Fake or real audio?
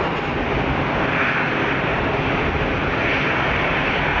real